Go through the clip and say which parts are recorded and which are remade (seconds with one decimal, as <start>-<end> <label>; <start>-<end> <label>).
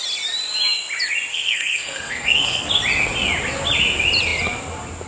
0.0-1.3 recorded; 1.3-2.7 remade; 2.7-5.1 recorded